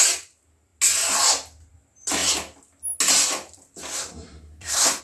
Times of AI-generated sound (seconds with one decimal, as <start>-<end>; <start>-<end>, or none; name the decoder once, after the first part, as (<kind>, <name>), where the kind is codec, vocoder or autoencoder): 3.9-5.0 (codec, SNAC)